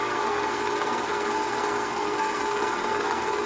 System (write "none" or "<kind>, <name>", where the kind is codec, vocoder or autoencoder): codec, SNAC